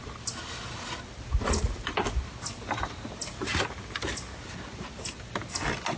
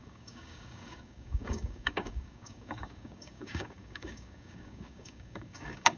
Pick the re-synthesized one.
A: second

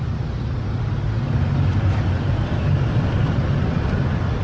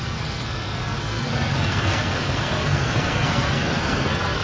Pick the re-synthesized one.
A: second